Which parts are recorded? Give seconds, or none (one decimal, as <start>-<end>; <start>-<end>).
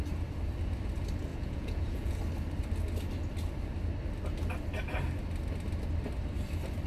0.0-1.3; 2.2-6.9